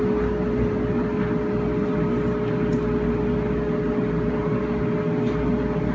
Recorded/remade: recorded